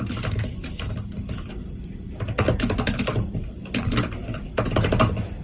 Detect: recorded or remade recorded